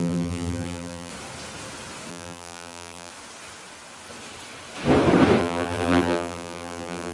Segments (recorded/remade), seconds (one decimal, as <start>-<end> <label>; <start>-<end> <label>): 0.0-1.1 remade; 1.1-2.1 recorded; 2.1-3.1 remade; 3.1-5.4 recorded; 5.4-7.1 remade